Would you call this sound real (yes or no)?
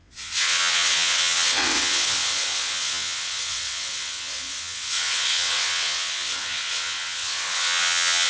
no